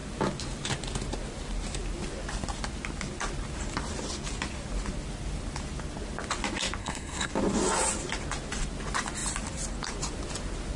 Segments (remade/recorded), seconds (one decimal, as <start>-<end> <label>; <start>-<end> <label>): 0.0-6.8 recorded; 6.8-7.3 remade; 7.3-10.8 recorded